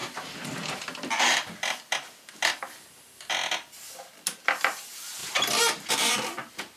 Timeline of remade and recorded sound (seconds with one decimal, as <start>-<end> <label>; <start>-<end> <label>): 0.0-2.5 remade; 2.5-5.2 recorded; 5.2-5.9 remade; 5.9-6.8 recorded